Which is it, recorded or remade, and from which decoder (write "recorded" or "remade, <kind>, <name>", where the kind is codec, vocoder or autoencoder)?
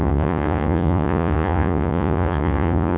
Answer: remade, vocoder, Vocos